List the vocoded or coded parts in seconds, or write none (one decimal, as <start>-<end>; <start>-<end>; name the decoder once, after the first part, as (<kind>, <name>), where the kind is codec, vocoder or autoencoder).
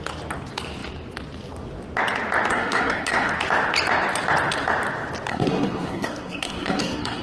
2.5-3.3 (codec, SNAC); 5.3-7.2